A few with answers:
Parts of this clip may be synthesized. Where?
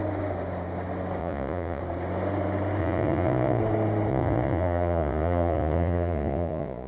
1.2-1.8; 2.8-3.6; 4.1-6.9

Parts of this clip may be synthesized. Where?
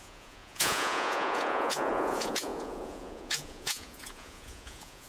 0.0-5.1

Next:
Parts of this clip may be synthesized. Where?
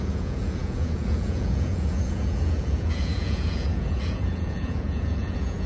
0.0-5.7